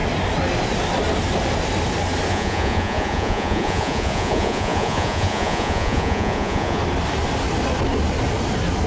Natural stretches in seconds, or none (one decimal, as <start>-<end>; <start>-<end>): 0.0-2.3; 6.8-8.9